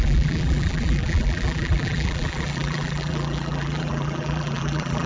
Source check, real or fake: fake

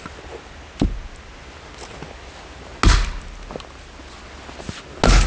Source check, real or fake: real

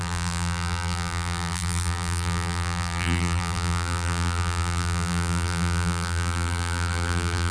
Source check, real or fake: fake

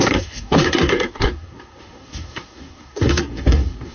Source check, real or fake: fake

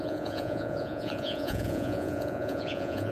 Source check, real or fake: fake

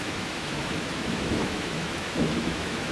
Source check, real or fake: fake